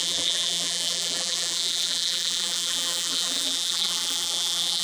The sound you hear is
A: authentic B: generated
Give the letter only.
B